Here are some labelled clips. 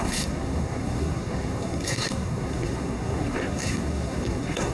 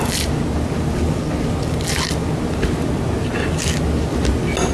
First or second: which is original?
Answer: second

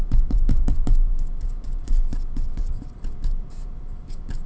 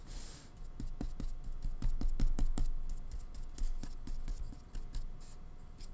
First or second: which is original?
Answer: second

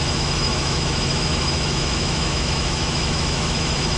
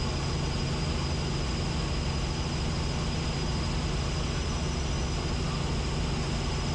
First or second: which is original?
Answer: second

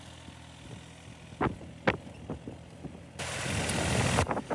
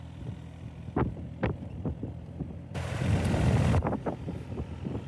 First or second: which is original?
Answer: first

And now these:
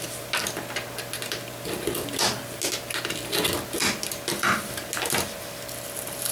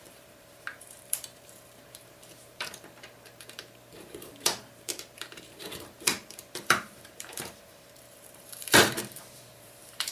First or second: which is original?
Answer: first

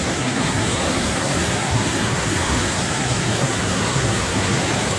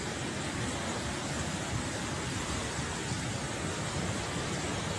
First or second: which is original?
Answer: second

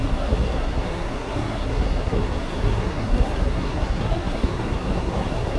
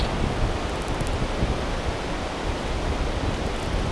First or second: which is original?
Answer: second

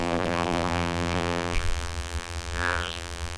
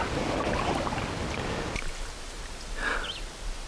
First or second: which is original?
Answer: second